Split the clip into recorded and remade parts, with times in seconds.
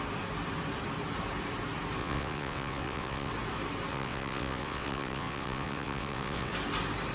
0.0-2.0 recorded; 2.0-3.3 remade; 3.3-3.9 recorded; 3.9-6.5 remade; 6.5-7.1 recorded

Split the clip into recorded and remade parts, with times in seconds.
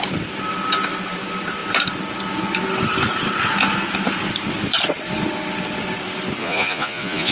0.0-6.4 recorded; 6.4-7.3 remade